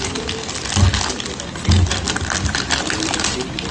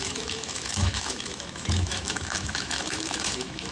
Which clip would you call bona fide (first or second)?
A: first